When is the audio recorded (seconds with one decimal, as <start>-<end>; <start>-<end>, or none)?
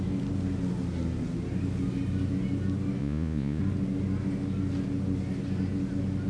0.0-3.0; 3.6-6.3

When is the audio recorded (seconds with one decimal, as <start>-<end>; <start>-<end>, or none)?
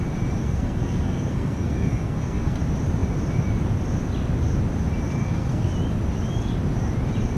0.0-0.4; 2.6-5.2; 5.7-7.4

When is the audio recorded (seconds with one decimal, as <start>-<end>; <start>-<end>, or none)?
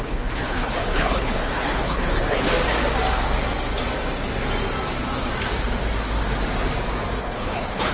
2.5-7.2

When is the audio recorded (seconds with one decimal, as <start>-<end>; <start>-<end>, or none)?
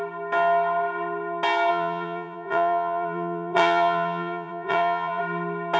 0.0-1.7; 5.2-5.8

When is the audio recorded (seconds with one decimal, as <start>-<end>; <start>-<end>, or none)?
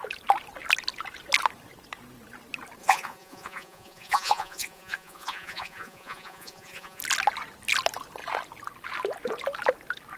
0.0-2.8; 7.0-10.2